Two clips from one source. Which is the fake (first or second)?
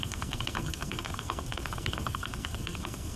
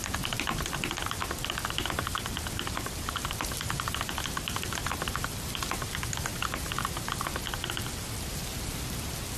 first